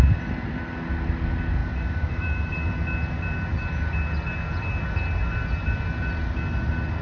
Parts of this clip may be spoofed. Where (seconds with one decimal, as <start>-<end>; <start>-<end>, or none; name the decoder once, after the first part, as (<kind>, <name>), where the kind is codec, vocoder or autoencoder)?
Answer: 1.6-2.5 (vocoder, BigVGAN v2)